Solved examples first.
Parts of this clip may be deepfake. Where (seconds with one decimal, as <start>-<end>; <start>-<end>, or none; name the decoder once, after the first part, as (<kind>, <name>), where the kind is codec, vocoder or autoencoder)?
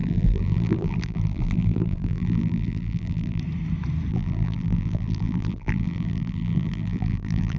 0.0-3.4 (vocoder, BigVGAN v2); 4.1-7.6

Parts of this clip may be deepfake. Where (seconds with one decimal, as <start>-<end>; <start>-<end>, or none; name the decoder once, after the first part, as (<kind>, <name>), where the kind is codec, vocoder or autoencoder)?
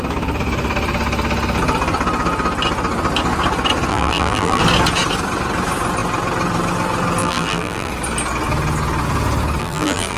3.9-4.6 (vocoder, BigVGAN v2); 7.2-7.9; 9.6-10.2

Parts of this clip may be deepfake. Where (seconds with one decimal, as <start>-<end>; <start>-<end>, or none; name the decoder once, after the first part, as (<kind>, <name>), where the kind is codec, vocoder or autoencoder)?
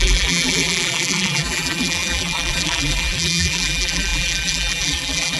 0.0-5.4 (vocoder, BigVGAN v2)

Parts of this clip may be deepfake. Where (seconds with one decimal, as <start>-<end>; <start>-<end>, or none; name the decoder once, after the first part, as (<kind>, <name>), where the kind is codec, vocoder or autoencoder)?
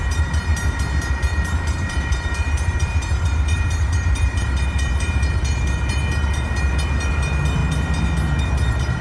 0.0-0.5 (vocoder, BigVGAN v2); 1.1-7.6; 8.4-9.0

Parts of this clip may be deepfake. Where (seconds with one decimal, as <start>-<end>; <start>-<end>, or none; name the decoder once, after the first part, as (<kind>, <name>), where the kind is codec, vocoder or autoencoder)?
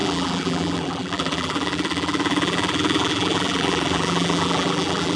0.0-5.2 (vocoder, BigVGAN v2)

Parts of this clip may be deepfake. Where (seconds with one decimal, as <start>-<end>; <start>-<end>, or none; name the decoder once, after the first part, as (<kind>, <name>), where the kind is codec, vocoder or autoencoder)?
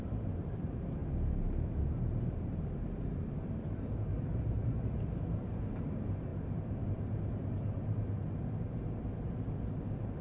0.0-10.2 (vocoder, BigVGAN v2)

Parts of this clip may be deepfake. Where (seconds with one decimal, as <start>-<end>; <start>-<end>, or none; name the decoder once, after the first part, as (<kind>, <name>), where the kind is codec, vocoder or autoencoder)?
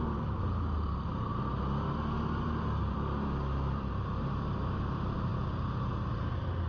0.0-1.3 (vocoder, BigVGAN v2); 2.4-5.3; 6.1-6.7